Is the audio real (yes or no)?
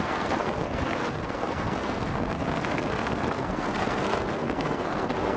no